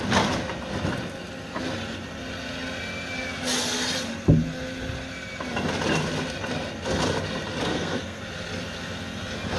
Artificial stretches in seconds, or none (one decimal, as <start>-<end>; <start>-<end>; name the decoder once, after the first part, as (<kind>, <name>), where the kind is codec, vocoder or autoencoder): 7.7-8.2 (codec, SNAC)